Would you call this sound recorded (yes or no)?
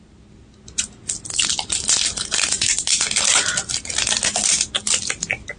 yes